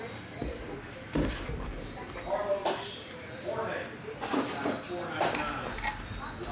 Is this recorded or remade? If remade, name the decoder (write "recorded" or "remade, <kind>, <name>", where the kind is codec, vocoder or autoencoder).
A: recorded